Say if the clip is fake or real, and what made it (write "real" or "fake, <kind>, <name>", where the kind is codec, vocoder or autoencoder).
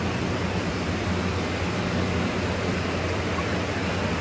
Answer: fake, vocoder, BigVGAN v2